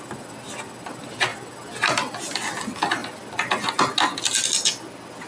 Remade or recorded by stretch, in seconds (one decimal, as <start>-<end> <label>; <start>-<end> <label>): 0.0-5.3 recorded